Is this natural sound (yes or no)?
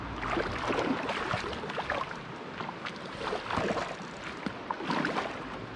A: yes